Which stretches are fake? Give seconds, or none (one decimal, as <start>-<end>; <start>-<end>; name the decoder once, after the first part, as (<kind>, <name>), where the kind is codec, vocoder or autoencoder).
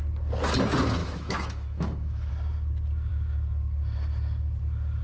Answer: 1.0-2.3 (autoencoder, DAC-VAE)